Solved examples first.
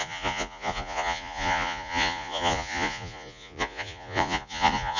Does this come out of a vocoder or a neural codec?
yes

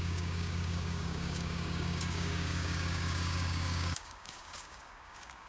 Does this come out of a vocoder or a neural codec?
yes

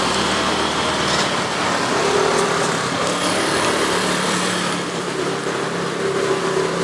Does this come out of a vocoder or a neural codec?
yes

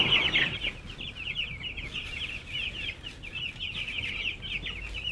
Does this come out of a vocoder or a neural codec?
no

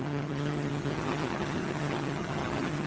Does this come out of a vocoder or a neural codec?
yes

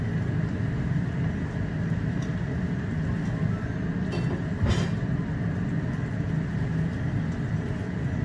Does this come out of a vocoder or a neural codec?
no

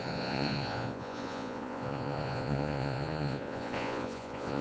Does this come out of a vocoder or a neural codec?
yes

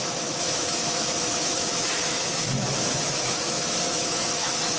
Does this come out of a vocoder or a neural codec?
yes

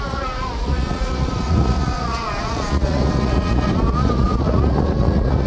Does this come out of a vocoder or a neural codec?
yes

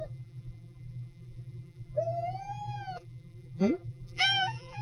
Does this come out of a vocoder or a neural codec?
yes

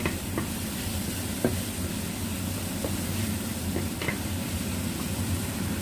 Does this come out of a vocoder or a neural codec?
yes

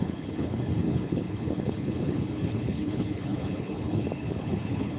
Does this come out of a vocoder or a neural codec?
yes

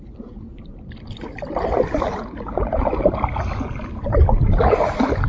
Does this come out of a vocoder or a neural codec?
no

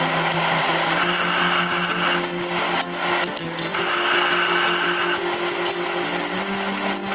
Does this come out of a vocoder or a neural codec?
no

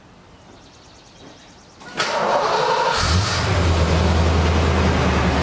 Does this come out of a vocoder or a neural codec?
no